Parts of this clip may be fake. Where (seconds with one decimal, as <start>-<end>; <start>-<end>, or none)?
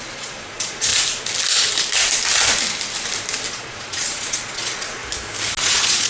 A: 0.0-0.9; 3.5-5.0; 5.6-6.1